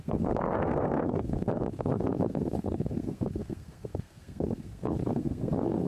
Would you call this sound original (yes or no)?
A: no